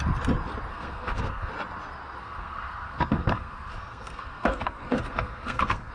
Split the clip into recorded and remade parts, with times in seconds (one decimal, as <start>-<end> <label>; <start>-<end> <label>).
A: 0.0-0.7 recorded; 0.7-1.5 remade; 1.5-2.2 recorded; 2.2-5.9 remade